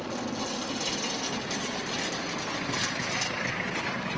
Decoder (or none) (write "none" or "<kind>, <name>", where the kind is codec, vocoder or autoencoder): none